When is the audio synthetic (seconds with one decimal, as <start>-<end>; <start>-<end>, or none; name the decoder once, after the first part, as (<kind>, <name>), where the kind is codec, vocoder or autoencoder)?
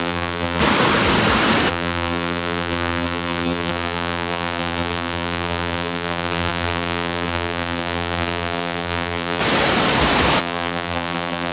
0.0-0.6 (vocoder, BigVGAN v2); 1.7-9.4; 10.4-11.5